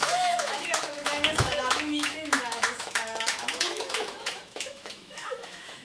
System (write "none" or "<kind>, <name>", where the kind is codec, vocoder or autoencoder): autoencoder, DAC-VAE